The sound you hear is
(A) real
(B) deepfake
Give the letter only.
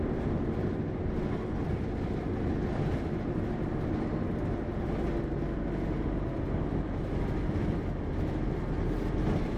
A